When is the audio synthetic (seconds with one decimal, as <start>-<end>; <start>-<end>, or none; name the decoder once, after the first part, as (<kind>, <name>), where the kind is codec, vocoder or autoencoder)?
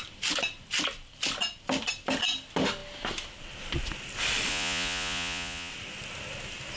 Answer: 4.5-5.7 (vocoder, Vocos)